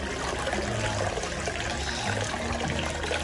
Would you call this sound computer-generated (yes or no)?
no